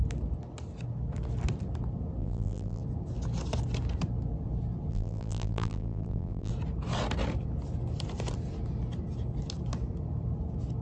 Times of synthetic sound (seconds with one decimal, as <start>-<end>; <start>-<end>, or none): 2.2-2.8; 4.9-6.5

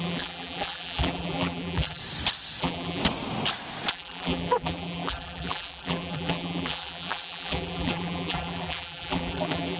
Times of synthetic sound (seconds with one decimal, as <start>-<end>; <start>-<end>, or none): 0.0-2.0; 2.6-3.0; 3.9-9.8

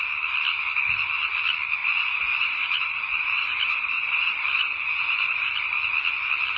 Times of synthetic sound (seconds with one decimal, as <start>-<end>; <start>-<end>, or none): 1.8-5.8

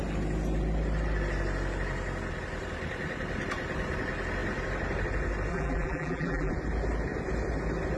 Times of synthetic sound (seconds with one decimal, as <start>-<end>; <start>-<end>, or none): 5.5-6.5